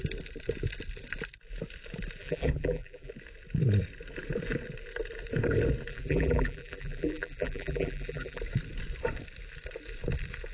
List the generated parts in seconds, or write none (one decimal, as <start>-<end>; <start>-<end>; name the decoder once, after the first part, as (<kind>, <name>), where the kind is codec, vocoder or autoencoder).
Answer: 2.2-3.1 (vocoder, BigVGAN v2); 5.9-8.4